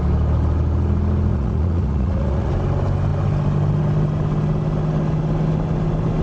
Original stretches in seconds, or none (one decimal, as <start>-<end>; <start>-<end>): 0.0-1.3; 2.5-6.2